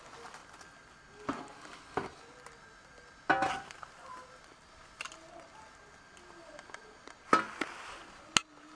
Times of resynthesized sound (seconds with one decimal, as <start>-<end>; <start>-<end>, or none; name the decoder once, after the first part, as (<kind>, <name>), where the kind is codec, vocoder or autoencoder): none